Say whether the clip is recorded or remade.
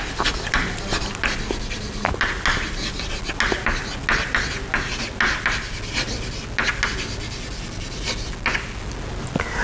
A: recorded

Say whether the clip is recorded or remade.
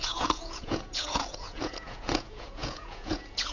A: remade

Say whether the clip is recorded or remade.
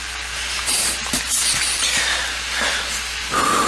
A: recorded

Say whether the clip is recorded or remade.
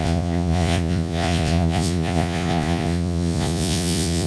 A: remade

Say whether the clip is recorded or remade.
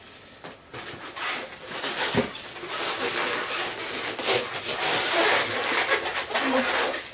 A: recorded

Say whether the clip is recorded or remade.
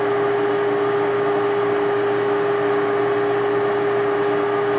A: recorded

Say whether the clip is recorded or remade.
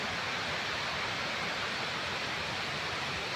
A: recorded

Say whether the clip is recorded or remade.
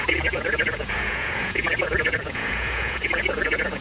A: remade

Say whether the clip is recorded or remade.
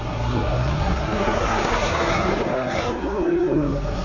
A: remade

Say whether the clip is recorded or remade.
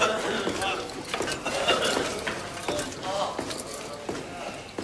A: recorded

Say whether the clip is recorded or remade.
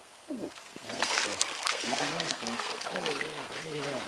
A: remade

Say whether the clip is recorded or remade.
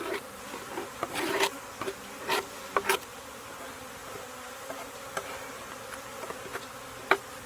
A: recorded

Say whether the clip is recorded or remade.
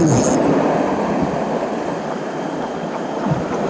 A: recorded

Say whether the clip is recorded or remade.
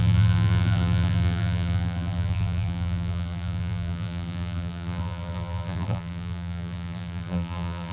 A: remade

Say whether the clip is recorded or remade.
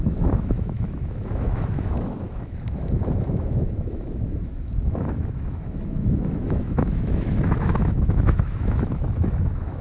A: remade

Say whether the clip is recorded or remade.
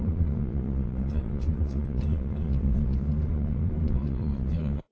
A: remade